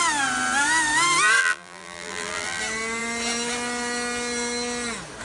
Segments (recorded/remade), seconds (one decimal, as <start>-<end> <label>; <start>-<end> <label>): 0.0-1.4 recorded; 1.4-2.6 remade; 2.6-5.2 recorded